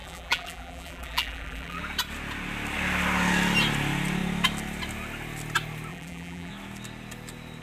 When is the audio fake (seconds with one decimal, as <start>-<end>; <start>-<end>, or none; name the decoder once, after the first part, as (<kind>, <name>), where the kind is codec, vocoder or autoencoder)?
0.0-1.8 (vocoder, BigVGAN v2); 5.9-6.5